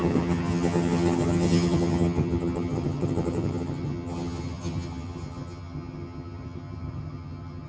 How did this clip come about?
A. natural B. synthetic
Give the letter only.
B